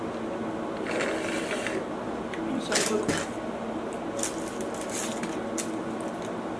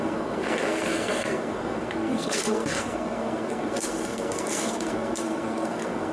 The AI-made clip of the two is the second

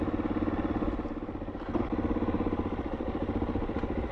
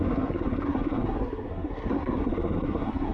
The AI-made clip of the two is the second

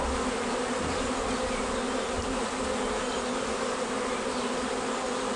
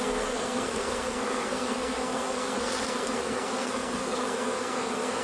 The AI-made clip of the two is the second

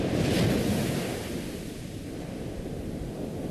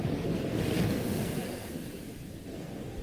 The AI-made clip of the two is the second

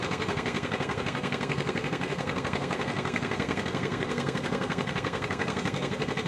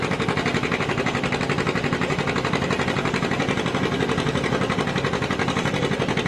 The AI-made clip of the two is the first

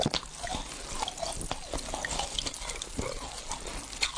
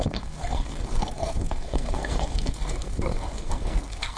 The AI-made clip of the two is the second